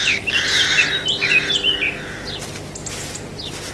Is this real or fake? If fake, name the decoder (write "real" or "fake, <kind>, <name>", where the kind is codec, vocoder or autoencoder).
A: real